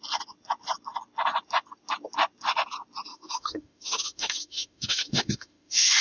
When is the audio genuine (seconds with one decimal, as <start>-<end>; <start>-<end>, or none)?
0.0-3.1